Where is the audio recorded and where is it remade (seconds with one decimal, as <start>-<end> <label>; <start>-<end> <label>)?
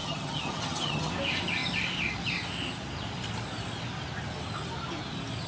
0.0-1.1 remade; 1.1-5.5 recorded